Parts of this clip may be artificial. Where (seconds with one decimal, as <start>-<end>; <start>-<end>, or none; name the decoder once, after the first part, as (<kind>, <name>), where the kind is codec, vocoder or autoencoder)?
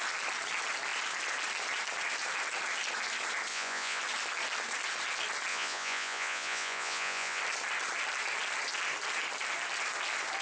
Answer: 3.5-4.0 (vocoder, Vocos); 5.5-7.4